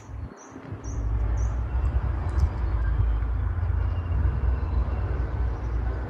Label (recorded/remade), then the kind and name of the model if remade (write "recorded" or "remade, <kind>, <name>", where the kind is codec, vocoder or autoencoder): recorded